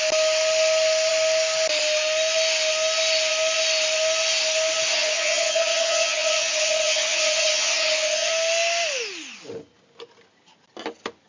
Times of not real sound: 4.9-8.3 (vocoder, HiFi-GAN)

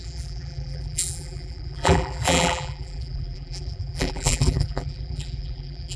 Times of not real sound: 0.0-6.0 (vocoder, BigVGAN v2)

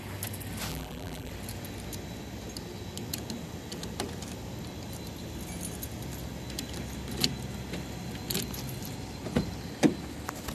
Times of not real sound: 0.7-1.3 (vocoder, BigVGAN v2)

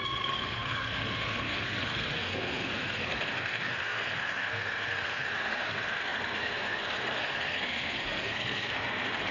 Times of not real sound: 0.0-9.3 (codec, SNAC)

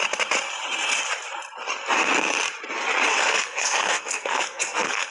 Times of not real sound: 3.1-5.1 (codec, SNAC)